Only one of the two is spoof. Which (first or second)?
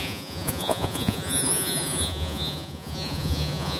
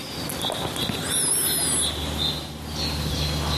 first